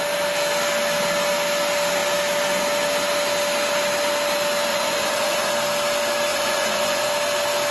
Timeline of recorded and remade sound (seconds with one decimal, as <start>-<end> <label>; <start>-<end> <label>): 0.0-4.7 recorded; 4.7-5.5 remade; 5.5-6.3 recorded; 6.3-7.1 remade; 7.1-7.7 recorded

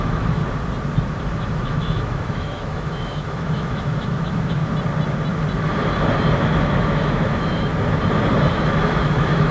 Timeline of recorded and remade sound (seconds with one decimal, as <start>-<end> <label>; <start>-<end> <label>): 0.0-0.4 remade; 0.4-1.2 recorded; 1.2-4.6 remade; 4.6-6.6 recorded; 6.6-7.7 remade; 7.7-8.5 recorded; 8.5-9.5 remade